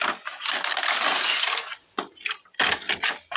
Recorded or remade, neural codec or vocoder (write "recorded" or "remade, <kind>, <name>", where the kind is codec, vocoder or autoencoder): recorded